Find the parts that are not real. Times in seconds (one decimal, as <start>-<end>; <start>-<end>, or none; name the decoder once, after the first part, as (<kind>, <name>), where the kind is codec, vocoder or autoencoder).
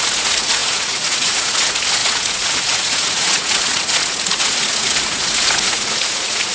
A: 0.0-6.5 (vocoder, Vocos)